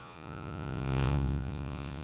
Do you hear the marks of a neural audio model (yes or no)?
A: yes